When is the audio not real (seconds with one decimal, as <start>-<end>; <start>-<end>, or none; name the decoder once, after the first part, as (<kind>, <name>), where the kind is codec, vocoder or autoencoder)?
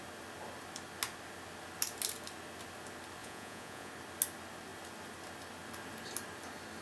3.2-3.9 (vocoder, Vocos)